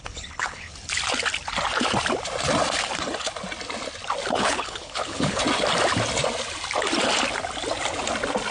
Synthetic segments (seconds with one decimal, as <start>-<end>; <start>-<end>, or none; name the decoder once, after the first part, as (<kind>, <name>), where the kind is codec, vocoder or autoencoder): 0.0-0.7 (codec, HILCodec); 4.3-5.4